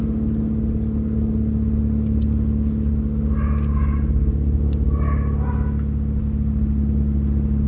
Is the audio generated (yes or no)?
no